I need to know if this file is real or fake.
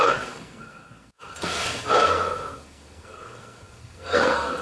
fake